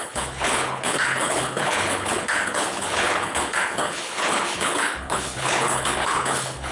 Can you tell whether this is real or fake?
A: fake